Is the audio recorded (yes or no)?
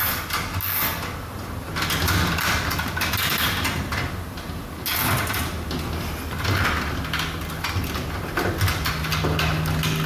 yes